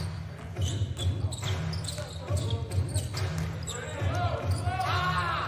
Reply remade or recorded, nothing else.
recorded